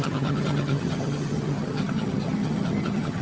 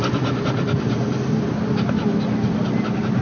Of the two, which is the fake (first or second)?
first